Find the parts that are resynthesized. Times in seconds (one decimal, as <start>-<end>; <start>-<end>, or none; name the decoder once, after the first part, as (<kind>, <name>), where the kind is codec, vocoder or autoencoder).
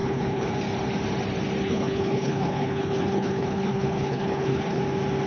0.0-0.5 (codec, HILCodec); 1.6-4.8